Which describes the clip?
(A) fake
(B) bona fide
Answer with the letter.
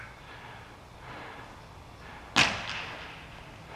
B